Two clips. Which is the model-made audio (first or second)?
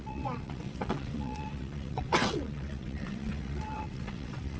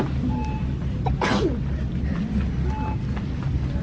first